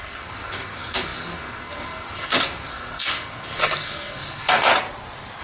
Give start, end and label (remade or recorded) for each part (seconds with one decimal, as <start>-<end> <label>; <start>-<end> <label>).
0.0-4.7 remade; 4.7-5.4 recorded